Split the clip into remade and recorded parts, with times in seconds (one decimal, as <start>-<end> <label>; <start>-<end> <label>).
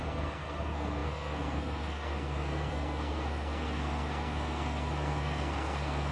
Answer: 0.0-6.1 remade